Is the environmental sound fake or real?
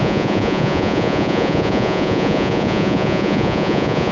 fake